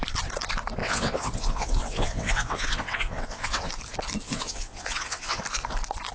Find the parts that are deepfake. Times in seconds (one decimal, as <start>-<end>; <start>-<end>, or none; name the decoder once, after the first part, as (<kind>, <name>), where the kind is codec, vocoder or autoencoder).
0.8-3.7 (vocoder, WaveNeXt); 4.2-5.4